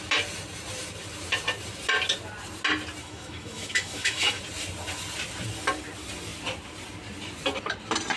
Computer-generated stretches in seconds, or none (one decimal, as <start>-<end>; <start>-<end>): 3.0-4.4